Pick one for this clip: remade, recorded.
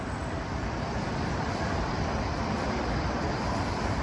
remade